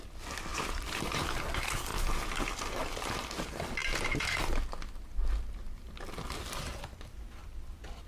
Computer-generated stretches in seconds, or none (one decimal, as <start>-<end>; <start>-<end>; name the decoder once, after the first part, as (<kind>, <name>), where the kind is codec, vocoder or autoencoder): 0.5-1.4 (vocoder, BigVGAN v2)